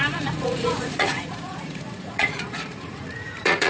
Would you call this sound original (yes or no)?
no